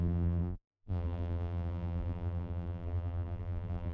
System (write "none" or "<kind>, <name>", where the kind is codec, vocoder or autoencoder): vocoder, BigVGAN v2